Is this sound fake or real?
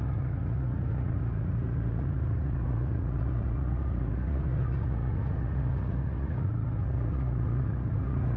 fake